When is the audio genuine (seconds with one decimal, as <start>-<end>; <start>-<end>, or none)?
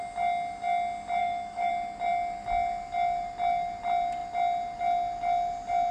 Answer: 0.0-1.2; 1.7-5.9